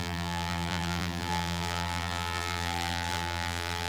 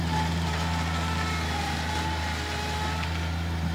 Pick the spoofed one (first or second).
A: first